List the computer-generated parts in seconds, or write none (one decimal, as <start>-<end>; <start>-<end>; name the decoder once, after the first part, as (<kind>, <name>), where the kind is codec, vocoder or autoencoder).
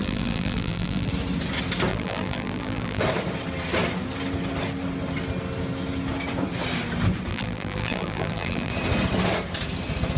0.0-1.1 (vocoder, BigVGAN v2); 1.9-3.0; 7.3-8.7